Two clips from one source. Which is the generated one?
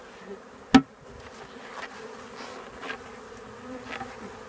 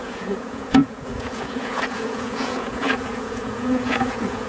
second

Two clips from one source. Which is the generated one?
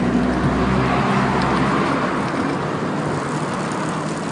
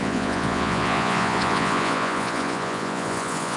second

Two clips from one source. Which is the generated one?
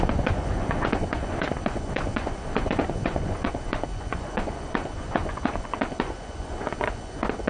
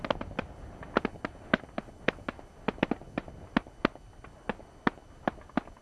first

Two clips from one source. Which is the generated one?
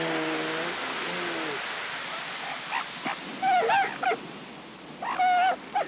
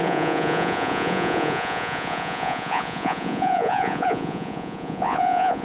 second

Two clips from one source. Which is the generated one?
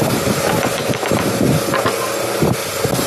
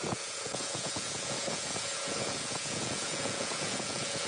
second